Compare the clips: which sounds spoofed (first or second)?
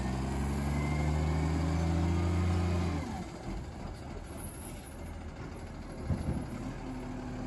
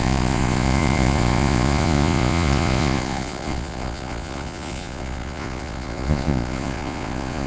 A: second